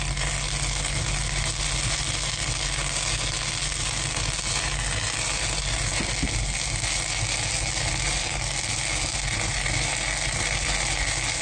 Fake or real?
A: real